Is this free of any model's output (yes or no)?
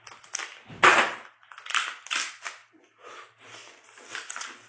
yes